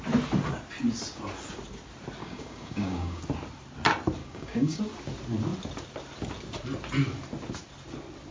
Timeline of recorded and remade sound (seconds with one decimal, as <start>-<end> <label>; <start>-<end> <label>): 0.0-2.2 recorded; 2.2-3.2 remade; 3.2-4.2 recorded; 4.2-4.8 remade; 4.8-8.3 recorded